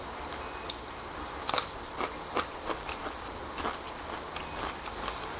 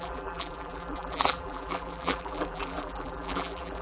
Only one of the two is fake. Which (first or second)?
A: second